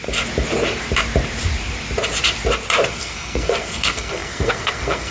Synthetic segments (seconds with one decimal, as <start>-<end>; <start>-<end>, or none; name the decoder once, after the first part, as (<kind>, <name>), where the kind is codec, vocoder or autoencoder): 2.9-5.1 (codec, SNAC)